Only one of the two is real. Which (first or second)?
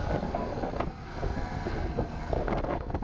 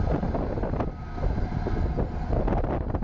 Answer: second